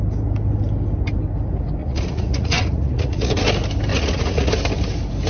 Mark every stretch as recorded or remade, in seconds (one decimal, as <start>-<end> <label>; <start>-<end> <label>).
0.0-1.8 recorded; 1.8-3.4 remade; 3.4-3.9 recorded; 3.9-4.5 remade; 4.5-5.3 recorded